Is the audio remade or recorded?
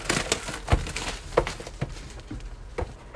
recorded